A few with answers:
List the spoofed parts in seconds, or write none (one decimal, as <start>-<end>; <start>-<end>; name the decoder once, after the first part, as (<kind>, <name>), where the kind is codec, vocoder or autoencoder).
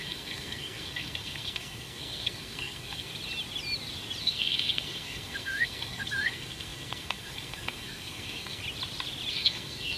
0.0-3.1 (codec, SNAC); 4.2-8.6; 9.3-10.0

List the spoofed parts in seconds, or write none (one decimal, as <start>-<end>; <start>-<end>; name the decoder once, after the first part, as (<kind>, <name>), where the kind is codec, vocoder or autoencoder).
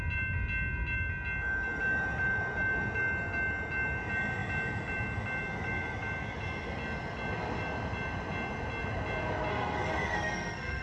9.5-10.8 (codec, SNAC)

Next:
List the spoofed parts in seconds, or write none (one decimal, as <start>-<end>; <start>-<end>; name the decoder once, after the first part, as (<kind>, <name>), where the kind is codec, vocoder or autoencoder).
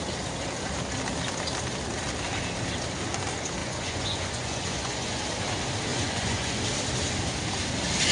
3.6-5.2 (vocoder, Vocos); 5.9-6.6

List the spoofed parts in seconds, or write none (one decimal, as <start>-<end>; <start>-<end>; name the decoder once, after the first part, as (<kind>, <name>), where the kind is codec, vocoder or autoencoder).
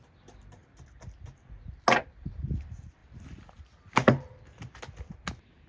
none